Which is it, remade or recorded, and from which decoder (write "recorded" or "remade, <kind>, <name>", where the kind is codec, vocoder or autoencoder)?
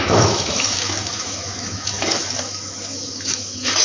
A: remade, autoencoder, DAC-VAE